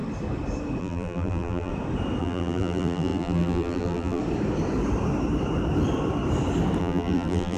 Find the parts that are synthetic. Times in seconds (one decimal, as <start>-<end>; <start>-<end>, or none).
0.8-1.7; 2.2-4.2; 6.8-7.6